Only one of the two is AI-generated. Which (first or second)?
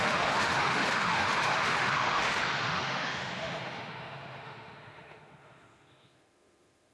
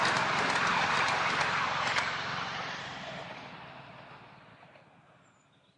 first